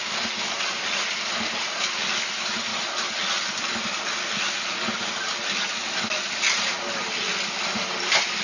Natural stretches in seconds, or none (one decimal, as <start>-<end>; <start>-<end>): 0.0-8.4